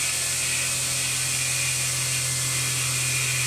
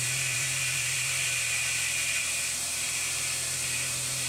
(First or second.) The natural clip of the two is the first